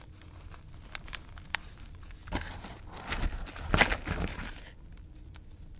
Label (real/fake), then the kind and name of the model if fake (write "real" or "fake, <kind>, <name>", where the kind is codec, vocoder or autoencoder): real